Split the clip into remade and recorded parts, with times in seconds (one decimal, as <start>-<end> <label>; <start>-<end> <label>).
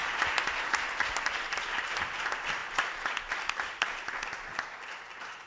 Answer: 0.0-5.5 recorded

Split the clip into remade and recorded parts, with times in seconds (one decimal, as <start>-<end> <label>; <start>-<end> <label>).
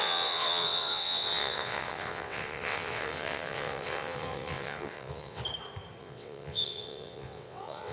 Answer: 0.0-5.4 remade; 5.4-6.0 recorded; 6.0-7.9 remade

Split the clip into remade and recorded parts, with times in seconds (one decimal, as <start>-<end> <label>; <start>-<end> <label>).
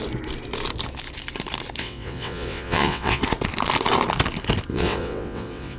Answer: 0.0-1.8 recorded; 1.8-3.2 remade; 3.2-4.7 recorded; 4.7-5.8 remade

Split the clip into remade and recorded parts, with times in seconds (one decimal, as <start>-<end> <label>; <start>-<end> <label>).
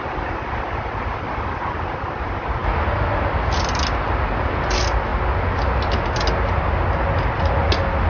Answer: 0.0-8.1 recorded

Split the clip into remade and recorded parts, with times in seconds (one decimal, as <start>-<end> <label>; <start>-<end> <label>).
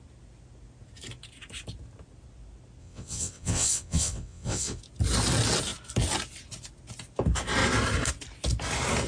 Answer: 0.0-2.8 recorded; 2.8-4.8 remade; 4.8-9.1 recorded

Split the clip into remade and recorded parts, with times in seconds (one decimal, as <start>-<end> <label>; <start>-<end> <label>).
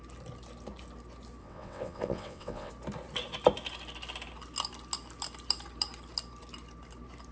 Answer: 0.0-1.4 recorded; 1.4-2.7 remade; 2.7-7.3 recorded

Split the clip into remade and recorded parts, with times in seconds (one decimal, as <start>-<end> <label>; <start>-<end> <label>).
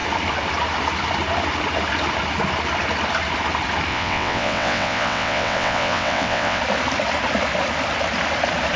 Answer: 0.0-3.9 recorded; 3.9-6.6 remade; 6.6-8.8 recorded